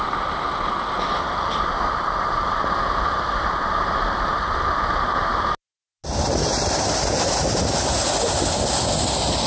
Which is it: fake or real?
real